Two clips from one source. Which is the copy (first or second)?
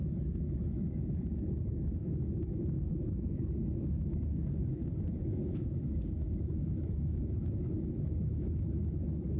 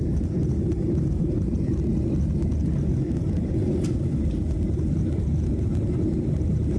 first